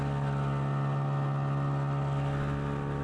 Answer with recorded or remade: recorded